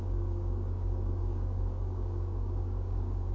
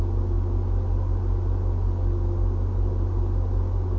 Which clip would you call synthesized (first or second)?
first